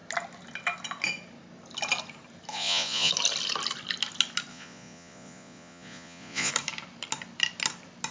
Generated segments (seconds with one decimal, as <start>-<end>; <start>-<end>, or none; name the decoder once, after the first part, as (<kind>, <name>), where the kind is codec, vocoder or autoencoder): 2.5-3.1 (vocoder, Vocos); 4.5-6.5